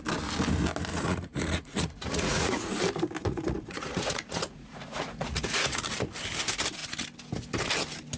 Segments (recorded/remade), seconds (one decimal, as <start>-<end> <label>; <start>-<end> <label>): 0.0-0.9 recorded; 0.9-2.7 remade; 2.7-3.2 recorded; 3.2-5.8 remade; 5.8-8.2 recorded